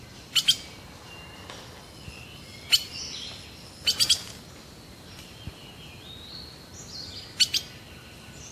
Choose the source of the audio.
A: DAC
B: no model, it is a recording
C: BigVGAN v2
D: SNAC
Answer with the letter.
B